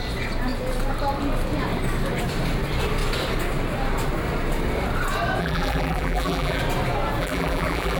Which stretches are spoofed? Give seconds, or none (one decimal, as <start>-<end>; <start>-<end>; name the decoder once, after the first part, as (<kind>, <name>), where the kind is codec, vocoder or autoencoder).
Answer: 5.4-6.6 (vocoder, BigVGAN v2); 7.2-8.0